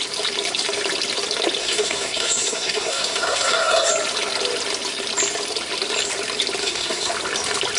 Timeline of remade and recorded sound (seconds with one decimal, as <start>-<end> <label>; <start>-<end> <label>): 0.0-1.6 recorded; 1.6-3.9 remade; 3.9-6.6 recorded; 6.6-7.1 remade; 7.1-7.8 recorded